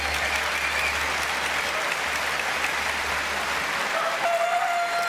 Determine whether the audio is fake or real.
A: real